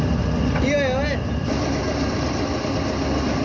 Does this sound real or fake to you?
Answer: real